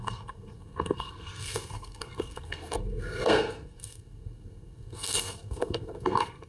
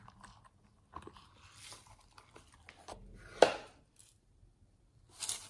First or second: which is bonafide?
second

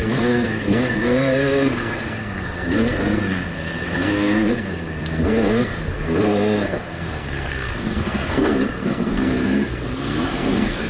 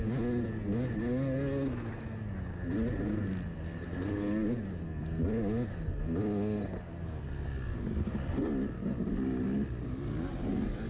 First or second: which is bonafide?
second